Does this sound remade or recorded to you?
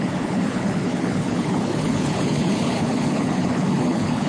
remade